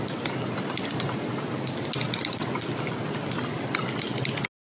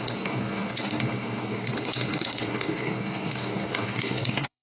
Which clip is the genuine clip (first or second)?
first